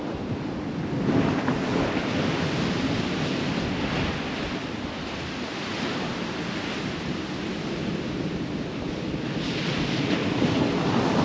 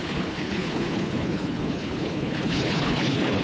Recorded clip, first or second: first